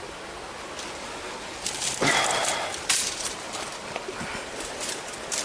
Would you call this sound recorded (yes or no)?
yes